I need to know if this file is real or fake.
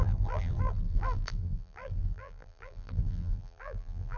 fake